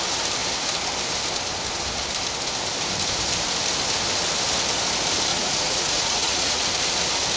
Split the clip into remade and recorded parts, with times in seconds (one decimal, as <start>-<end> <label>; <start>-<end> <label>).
0.0-5.3 recorded; 5.3-6.6 remade; 6.6-7.4 recorded